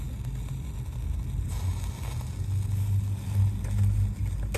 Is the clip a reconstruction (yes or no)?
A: no